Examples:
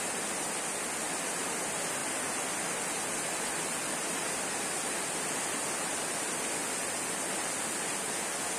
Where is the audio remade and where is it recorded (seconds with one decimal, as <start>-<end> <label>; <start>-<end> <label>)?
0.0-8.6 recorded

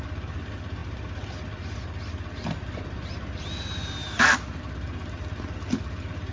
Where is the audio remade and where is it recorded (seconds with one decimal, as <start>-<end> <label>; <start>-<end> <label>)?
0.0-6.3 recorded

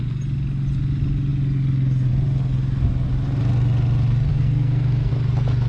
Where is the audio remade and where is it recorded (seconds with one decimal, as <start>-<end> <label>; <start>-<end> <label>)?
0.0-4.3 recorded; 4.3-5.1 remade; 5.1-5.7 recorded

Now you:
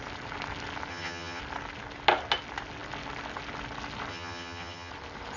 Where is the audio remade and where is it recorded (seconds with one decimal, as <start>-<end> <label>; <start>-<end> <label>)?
0.0-0.9 recorded; 0.9-1.4 remade; 1.4-4.1 recorded; 4.1-4.9 remade; 4.9-5.4 recorded

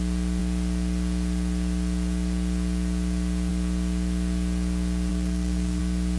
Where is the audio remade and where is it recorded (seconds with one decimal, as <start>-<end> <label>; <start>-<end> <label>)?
0.0-5.1 recorded; 5.1-5.8 remade; 5.8-6.2 recorded